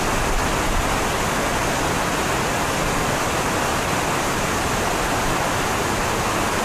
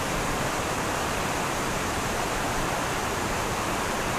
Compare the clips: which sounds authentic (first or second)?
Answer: first